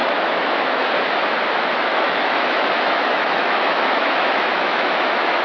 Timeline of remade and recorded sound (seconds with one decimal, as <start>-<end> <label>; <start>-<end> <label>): 0.0-0.9 remade; 0.9-1.9 recorded; 1.9-5.4 remade